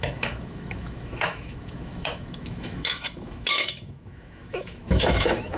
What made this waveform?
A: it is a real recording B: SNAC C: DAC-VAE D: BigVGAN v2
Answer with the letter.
C